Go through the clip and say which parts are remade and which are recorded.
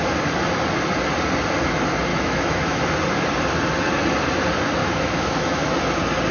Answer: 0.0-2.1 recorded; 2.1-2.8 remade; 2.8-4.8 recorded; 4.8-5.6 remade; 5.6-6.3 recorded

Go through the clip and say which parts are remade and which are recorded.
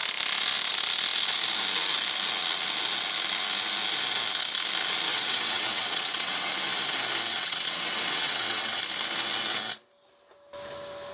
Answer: 0.0-5.1 recorded; 5.1-6.5 remade; 6.5-7.3 recorded; 7.3-8.8 remade; 8.8-11.1 recorded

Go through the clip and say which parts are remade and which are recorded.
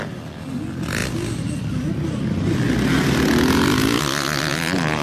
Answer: 0.0-5.0 recorded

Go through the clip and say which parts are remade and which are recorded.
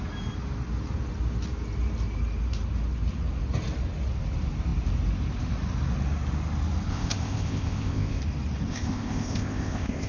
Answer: 0.0-6.9 recorded; 6.9-8.2 remade; 8.2-8.7 recorded; 8.7-10.1 remade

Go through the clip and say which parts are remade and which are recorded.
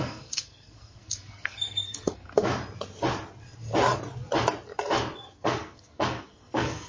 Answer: 0.0-2.5 remade; 2.5-5.3 recorded; 5.3-6.9 remade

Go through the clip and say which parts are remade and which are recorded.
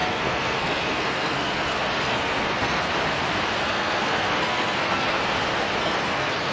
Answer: 0.0-2.9 remade; 2.9-3.6 recorded; 3.6-5.2 remade; 5.2-5.8 recorded; 5.8-6.5 remade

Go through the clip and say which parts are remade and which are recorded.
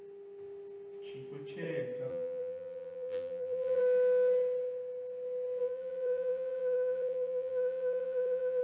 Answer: 0.0-2.1 recorded; 2.1-3.8 remade; 3.8-5.6 recorded; 5.6-8.6 remade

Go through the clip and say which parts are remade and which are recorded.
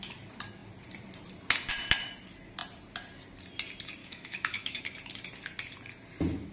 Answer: 0.0-4.0 recorded; 4.0-4.8 remade; 4.8-6.5 recorded